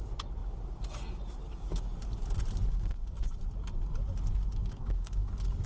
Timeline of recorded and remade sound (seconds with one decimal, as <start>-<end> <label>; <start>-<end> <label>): 0.0-2.7 recorded; 2.7-3.2 remade; 3.2-4.6 recorded; 4.6-5.3 remade; 5.3-5.7 recorded